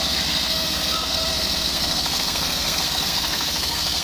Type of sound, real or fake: fake